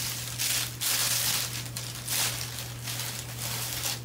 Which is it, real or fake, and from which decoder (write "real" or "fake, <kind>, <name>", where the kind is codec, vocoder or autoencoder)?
real